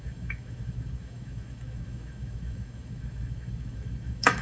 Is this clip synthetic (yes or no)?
yes